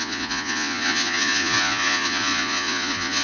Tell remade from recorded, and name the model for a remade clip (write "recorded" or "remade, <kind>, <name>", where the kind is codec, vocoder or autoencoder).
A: remade, vocoder, Vocos